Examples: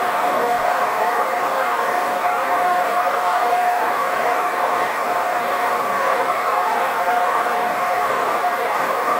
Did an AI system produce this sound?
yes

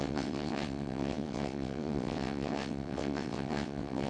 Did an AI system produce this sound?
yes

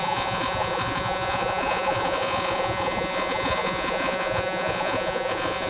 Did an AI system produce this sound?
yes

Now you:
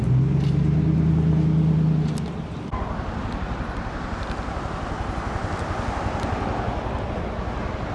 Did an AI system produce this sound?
no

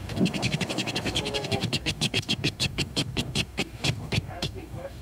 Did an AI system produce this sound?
yes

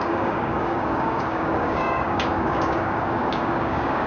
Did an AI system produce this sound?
yes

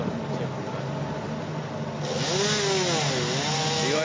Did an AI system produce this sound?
no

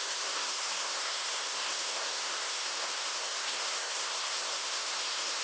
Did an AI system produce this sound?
yes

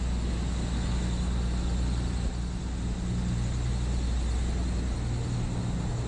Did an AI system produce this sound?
no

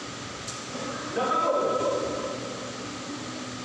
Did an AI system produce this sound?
no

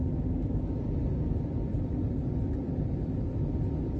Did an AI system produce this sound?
no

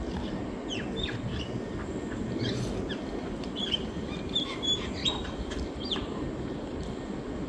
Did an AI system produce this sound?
no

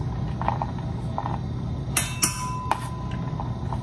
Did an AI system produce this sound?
no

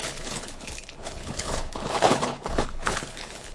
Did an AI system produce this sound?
yes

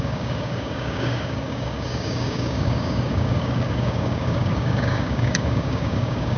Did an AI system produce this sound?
yes